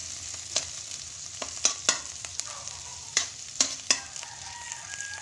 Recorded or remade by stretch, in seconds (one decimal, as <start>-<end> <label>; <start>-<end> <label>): 0.0-2.9 recorded; 2.9-3.8 remade; 3.8-5.2 recorded